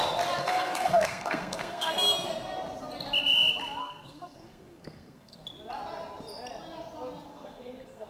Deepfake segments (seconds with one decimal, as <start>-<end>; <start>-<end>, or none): 0.4-1.9; 3.8-5.4; 7.3-8.1